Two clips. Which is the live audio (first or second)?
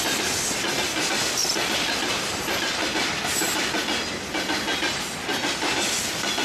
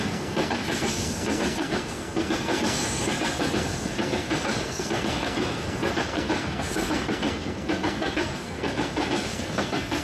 first